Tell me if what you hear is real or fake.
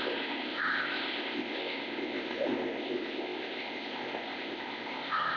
fake